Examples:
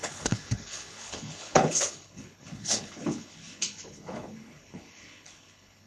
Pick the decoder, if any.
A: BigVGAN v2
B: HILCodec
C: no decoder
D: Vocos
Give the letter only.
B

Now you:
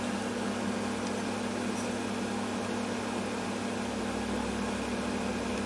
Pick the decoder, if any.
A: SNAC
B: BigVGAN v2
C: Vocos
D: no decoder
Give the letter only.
D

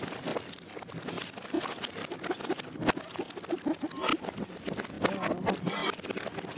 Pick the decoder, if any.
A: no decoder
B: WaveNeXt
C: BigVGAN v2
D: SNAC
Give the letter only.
A